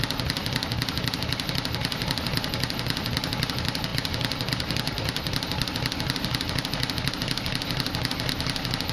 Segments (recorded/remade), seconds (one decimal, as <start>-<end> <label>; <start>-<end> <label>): 0.0-8.9 recorded